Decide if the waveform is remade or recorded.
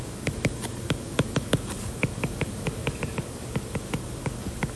remade